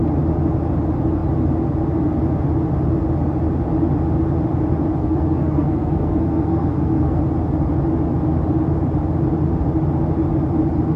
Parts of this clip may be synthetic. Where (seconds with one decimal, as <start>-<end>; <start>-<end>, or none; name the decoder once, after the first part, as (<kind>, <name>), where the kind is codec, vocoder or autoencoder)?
5.0-7.2 (codec, SNAC)